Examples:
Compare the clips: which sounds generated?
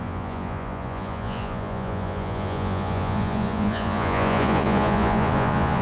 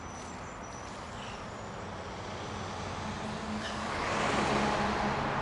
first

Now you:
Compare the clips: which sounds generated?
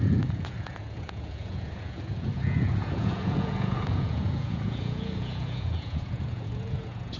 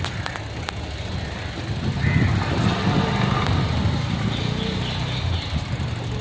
first